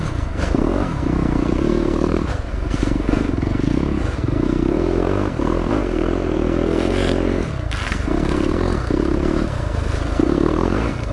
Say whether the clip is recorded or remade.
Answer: remade